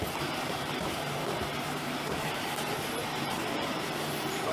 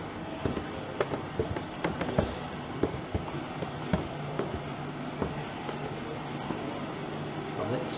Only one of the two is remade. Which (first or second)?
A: first